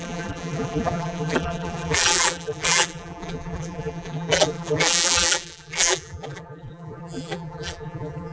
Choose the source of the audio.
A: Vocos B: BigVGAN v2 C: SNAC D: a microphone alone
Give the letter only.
B